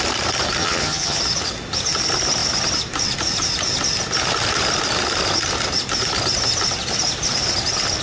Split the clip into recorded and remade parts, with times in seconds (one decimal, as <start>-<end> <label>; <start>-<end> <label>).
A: 0.0-0.6 recorded; 0.6-1.2 remade; 1.2-8.0 recorded